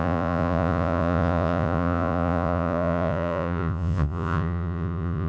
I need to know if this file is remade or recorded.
remade